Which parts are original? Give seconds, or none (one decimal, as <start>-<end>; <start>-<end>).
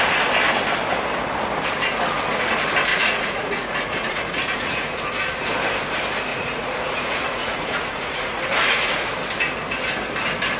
0.0-2.9; 5.1-6.3; 9.1-10.6